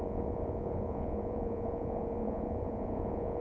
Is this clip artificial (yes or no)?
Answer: yes